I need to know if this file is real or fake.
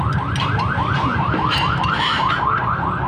real